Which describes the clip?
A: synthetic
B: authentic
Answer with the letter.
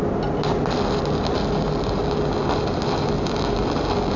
B